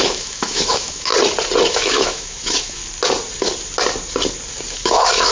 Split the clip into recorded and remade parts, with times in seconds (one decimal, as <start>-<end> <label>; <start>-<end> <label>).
0.0-1.1 remade; 1.1-1.7 recorded; 1.7-2.8 remade; 2.8-4.7 recorded; 4.7-5.3 remade